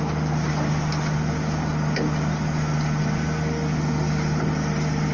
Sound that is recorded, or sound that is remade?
recorded